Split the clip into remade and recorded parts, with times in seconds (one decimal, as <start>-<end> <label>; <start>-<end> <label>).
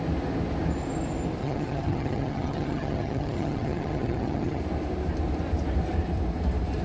0.0-1.4 recorded; 1.4-4.6 remade; 4.6-6.8 recorded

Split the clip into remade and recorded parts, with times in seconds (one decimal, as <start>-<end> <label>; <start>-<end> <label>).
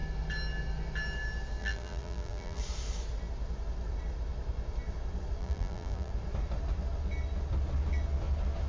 0.0-1.6 recorded; 1.6-2.6 remade; 2.6-5.4 recorded; 5.4-6.1 remade; 6.1-8.7 recorded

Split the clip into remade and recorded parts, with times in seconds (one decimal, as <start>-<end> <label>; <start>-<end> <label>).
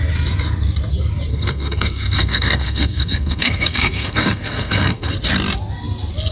0.0-1.3 recorded; 1.3-5.1 remade; 5.1-6.3 recorded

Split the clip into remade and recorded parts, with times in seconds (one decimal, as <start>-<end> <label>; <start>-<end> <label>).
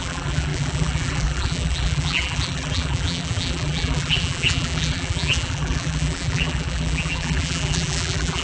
0.0-8.4 remade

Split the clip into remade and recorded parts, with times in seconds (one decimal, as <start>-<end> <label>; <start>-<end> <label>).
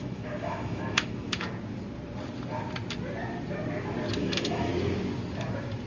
0.0-1.5 remade; 1.5-4.2 recorded; 4.2-4.7 remade; 4.7-5.9 recorded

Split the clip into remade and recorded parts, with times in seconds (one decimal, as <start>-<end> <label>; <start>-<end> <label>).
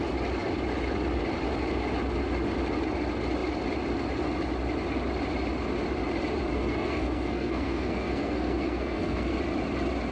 0.0-6.5 recorded; 6.5-9.4 remade; 9.4-10.1 recorded